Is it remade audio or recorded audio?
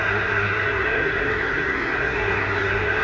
remade